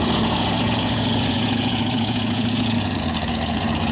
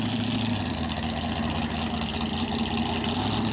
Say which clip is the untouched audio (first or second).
second